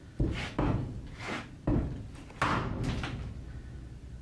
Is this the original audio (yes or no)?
yes